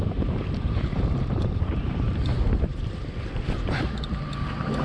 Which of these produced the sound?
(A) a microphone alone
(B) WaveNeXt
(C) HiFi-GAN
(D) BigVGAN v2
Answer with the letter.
D